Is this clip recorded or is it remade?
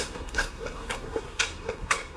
remade